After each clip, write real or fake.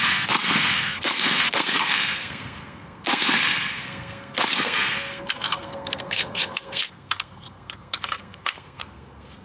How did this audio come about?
fake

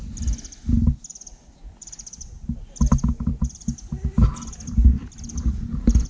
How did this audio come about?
real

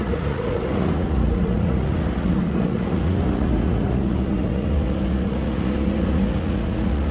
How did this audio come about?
fake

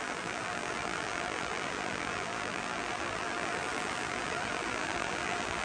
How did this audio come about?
fake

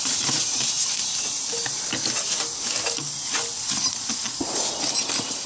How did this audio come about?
real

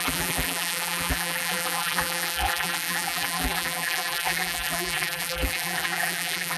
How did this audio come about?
fake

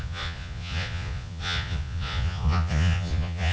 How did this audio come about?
fake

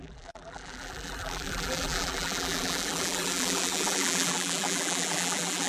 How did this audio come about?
fake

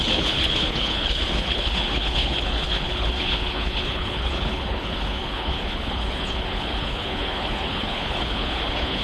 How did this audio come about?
fake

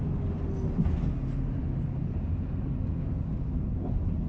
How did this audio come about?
real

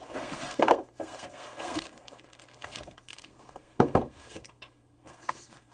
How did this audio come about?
fake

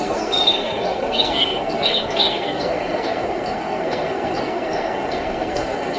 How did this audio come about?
fake